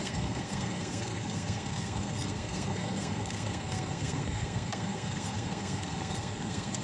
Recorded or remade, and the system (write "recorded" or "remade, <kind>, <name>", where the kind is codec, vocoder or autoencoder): remade, codec, SNAC